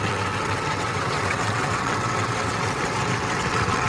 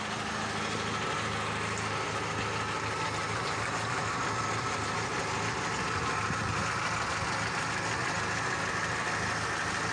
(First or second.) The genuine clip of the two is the second